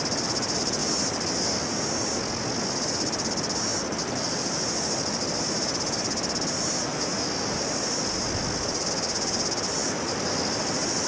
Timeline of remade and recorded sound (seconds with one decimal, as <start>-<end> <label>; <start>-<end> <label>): 0.0-11.1 recorded